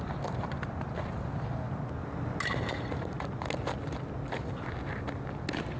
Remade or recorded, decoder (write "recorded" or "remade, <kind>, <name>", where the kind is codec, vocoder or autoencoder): recorded